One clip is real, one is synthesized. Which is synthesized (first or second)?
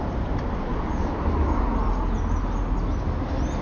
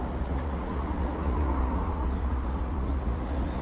second